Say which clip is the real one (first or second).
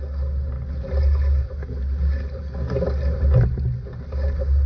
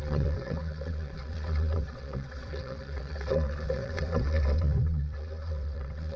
first